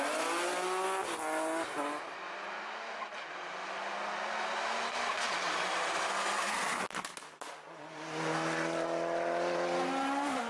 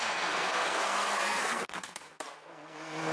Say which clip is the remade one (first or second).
second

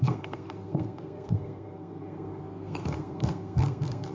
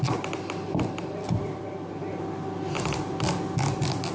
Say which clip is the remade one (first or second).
first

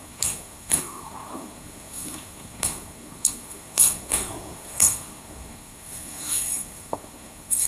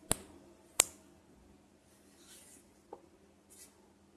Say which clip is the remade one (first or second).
first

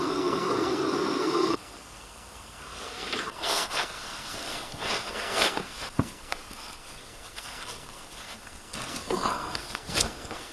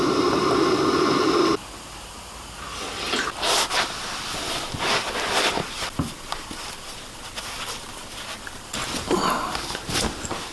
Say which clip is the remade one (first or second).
first